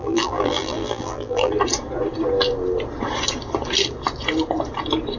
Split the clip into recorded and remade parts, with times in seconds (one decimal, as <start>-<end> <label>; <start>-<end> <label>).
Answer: 0.0-1.5 remade; 1.5-5.2 recorded